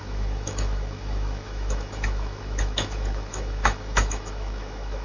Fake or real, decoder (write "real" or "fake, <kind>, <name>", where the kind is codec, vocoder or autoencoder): fake, autoencoder, DAC-VAE